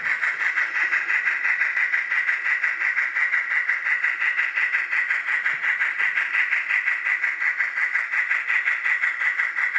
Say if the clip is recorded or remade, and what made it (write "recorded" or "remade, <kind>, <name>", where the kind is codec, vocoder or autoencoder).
recorded